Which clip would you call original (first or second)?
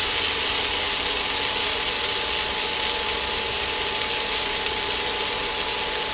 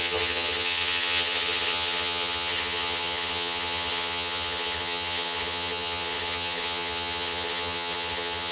first